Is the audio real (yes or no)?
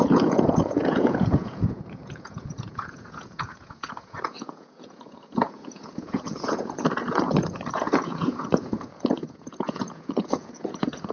no